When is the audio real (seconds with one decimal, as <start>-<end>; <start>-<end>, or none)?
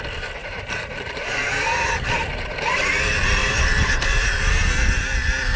0.0-0.4; 2.8-3.4; 4.5-5.6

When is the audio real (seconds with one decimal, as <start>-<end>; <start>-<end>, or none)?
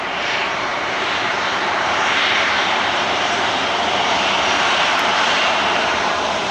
0.7-1.3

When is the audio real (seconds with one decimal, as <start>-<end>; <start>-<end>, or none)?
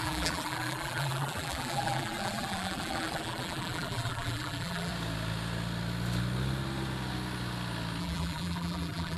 4.9-8.0